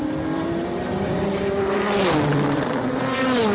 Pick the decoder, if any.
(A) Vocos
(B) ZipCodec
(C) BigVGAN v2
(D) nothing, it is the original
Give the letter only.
D